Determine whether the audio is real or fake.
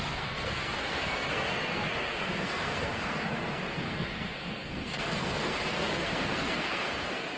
fake